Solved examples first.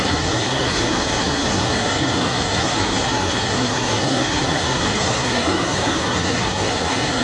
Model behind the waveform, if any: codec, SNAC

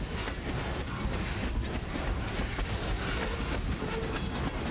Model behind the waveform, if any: none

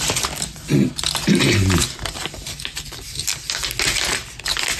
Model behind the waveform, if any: none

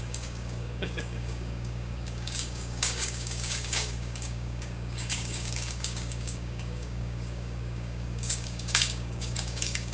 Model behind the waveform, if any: codec, DAC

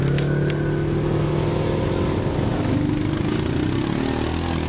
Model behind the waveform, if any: none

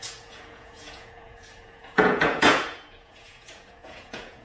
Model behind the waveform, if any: vocoder, Vocos